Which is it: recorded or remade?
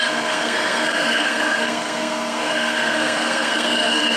remade